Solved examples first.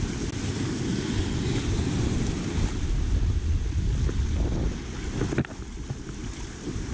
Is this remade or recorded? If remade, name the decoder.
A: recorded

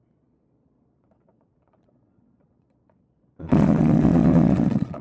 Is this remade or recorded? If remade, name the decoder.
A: remade, vocoder, Vocos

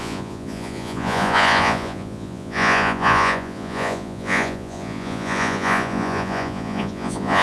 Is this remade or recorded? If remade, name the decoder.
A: remade, vocoder, Vocos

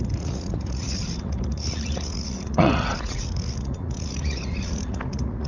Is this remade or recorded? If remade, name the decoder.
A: remade, vocoder, Vocos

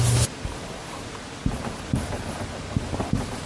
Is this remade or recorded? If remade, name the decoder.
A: recorded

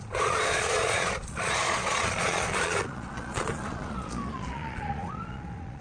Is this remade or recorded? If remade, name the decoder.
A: remade, vocoder, Vocos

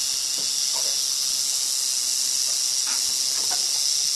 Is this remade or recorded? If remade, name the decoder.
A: recorded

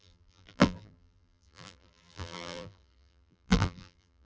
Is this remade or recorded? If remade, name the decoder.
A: remade, vocoder, BigVGAN v2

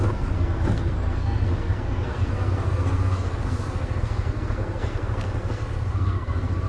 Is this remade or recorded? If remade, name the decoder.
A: remade, codec, SNAC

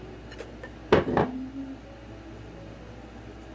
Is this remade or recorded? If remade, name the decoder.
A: recorded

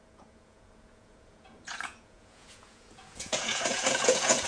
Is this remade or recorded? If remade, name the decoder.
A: remade, vocoder, Vocos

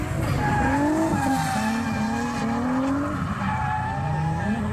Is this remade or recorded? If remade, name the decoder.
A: recorded